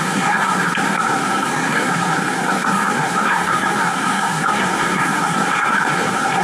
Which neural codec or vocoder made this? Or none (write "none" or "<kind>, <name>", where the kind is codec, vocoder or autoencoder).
codec, SNAC